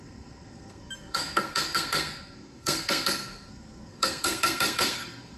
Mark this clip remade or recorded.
remade